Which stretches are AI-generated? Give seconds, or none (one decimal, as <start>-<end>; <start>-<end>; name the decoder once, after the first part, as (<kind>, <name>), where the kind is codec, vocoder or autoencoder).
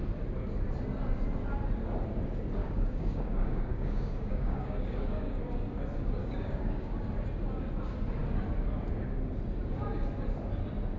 2.6-5.4 (codec, DAC); 6.2-7.0